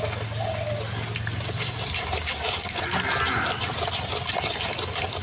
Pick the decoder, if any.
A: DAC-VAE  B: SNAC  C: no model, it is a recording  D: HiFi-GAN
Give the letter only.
C